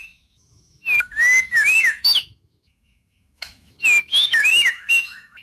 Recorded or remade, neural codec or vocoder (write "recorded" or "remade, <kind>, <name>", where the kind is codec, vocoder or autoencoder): remade, autoencoder, DAC-VAE